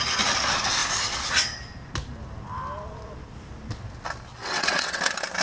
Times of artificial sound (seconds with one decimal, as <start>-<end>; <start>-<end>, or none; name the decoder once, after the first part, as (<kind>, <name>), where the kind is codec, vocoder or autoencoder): 4.4-5.0 (vocoder, WaveNeXt)